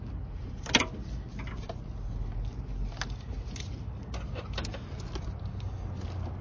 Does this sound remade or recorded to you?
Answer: recorded